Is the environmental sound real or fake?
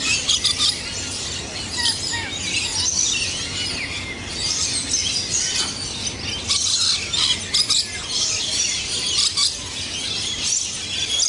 real